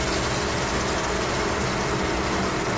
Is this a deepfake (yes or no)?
no